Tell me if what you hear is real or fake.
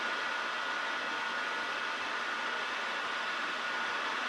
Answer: real